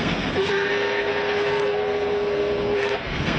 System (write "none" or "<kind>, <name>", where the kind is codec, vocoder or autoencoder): codec, SNAC